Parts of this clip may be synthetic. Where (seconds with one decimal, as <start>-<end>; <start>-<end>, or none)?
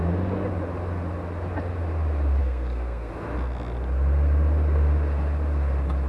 2.4-3.1